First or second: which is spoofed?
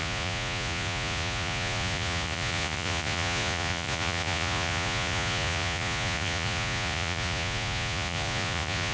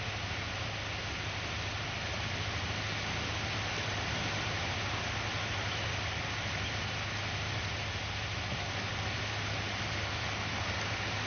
first